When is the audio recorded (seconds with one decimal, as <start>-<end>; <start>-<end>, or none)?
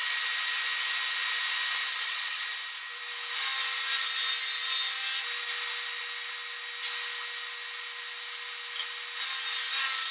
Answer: 0.0-1.9; 2.4-10.1